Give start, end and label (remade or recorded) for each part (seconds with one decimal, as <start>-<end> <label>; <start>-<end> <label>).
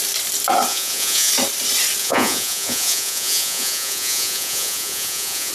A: 0.0-0.7 recorded; 0.7-1.3 remade; 1.3-2.0 recorded; 2.0-5.5 remade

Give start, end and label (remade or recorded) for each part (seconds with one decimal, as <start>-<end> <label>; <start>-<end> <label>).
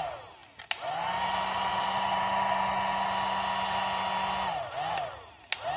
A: 0.0-5.8 recorded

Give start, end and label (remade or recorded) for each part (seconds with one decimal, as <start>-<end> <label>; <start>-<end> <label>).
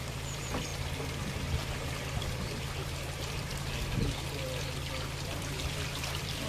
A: 0.0-0.7 remade; 0.7-1.7 recorded; 1.7-3.5 remade; 3.5-4.8 recorded; 4.8-6.5 remade